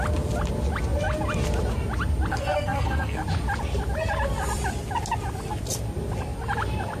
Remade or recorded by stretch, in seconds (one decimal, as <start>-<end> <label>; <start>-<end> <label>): 0.0-2.3 recorded; 2.3-3.2 remade; 3.2-7.0 recorded